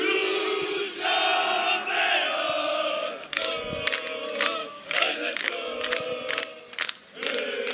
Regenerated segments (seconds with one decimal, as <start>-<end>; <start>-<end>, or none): 2.6-3.6; 4.6-5.8